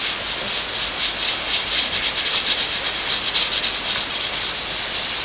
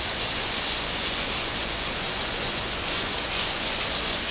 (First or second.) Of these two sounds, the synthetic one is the second